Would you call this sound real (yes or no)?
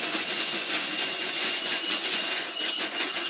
no